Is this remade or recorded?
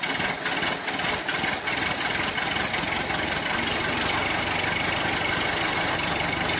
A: recorded